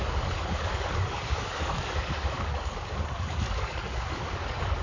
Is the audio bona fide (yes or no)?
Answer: no